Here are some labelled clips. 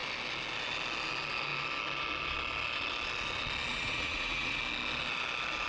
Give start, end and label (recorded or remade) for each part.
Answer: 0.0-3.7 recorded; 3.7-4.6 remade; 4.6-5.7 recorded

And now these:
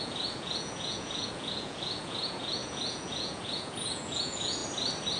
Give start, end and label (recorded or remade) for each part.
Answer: 0.0-4.6 remade; 4.6-5.2 recorded

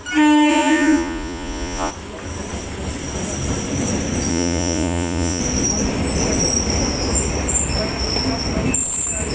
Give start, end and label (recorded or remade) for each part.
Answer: 0.0-0.5 recorded; 0.5-1.9 remade; 1.9-4.3 recorded; 4.3-5.4 remade; 5.4-9.3 recorded

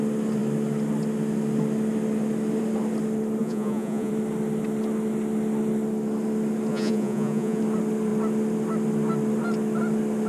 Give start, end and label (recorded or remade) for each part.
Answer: 0.0-3.4 recorded; 3.4-4.1 remade; 4.1-6.7 recorded; 6.7-7.6 remade; 7.6-10.3 recorded

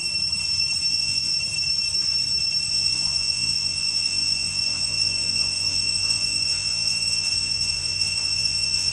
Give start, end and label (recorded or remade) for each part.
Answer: 0.0-0.9 recorded; 0.9-1.3 remade; 1.3-2.7 recorded; 2.7-8.9 remade